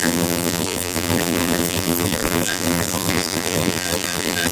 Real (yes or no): no